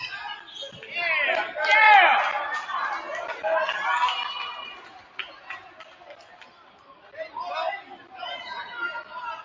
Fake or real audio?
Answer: real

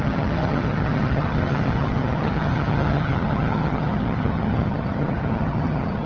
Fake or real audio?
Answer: fake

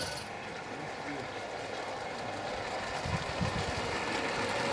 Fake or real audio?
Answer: real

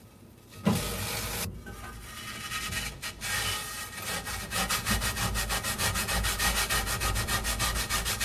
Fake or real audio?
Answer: real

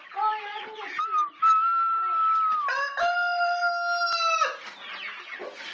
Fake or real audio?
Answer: real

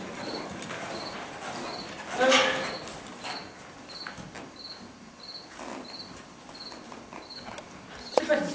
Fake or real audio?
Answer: real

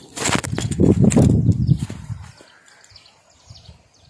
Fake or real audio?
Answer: real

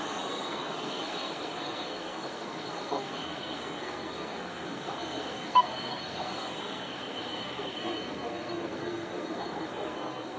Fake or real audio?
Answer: fake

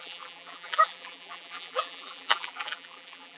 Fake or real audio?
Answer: fake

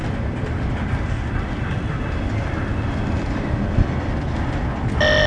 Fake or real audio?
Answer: real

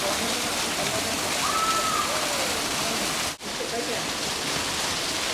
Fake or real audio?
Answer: real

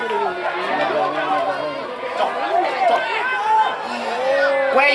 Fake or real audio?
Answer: real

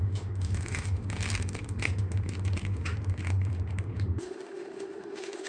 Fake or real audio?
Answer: fake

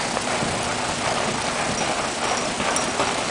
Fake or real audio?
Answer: real